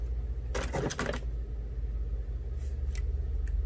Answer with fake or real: real